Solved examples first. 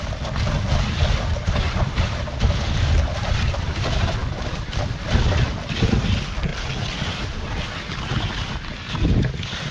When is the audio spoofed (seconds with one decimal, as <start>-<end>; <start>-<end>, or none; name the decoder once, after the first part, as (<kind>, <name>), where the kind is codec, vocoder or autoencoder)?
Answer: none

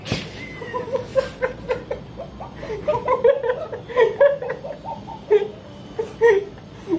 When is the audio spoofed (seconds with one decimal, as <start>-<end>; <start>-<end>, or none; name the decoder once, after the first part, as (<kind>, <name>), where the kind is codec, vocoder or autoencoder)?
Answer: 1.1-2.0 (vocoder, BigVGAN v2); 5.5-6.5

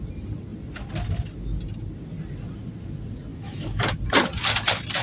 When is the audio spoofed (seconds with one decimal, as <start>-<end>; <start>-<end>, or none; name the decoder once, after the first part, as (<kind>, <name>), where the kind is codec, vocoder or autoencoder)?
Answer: 3.3-4.0 (autoencoder, DAC-VAE)

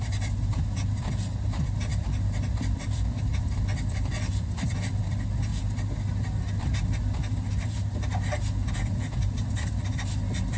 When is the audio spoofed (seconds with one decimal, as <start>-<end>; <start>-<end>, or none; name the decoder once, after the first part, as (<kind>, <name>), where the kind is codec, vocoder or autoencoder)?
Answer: 0.0-5.5 (vocoder, BigVGAN v2); 7.5-8.1; 8.7-10.6